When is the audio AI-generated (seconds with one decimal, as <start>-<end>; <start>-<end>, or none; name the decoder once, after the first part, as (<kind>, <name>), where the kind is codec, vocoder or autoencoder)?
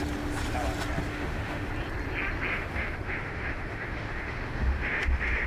1.1-1.7 (autoencoder, DAC-VAE); 2.5-5.5